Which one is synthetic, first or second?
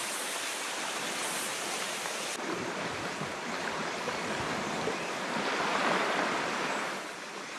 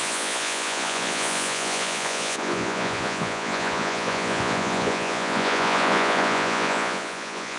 second